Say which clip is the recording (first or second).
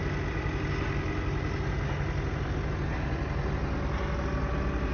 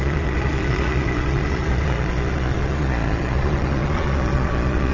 first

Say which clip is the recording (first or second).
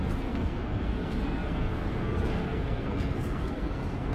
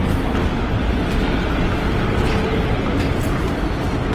second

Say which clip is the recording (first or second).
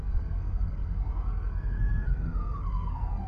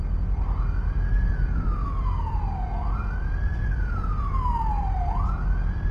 second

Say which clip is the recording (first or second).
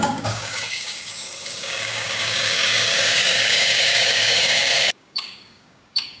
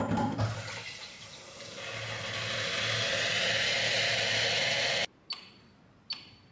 second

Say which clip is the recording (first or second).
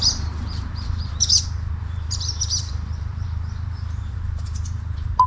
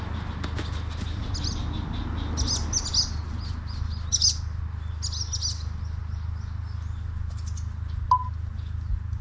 second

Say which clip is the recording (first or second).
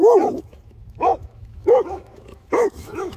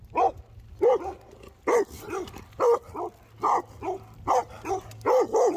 second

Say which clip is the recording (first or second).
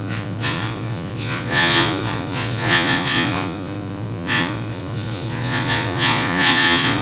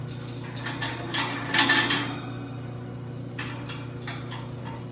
second